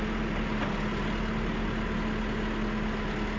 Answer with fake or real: real